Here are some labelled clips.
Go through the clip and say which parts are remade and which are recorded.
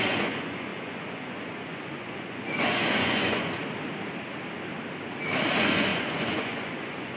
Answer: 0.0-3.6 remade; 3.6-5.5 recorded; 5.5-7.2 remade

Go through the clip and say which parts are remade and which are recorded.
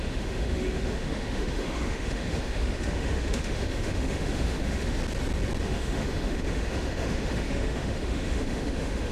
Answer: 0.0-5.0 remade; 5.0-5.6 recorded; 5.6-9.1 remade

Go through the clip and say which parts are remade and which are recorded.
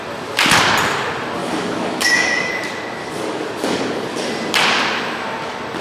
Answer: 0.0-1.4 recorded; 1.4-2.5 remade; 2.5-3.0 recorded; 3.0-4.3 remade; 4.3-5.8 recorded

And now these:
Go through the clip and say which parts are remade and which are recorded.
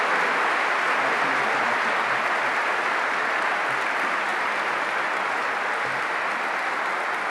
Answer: 0.0-7.3 recorded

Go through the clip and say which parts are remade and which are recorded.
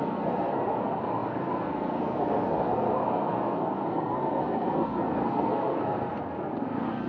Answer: 0.0-7.1 remade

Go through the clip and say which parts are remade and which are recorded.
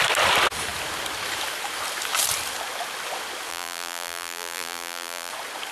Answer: 0.0-3.5 recorded; 3.5-5.3 remade; 5.3-5.7 recorded